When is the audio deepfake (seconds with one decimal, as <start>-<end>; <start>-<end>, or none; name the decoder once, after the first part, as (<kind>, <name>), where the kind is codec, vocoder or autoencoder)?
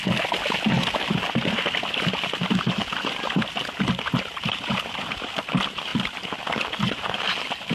none